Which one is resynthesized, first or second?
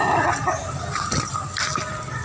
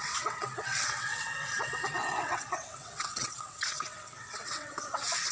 second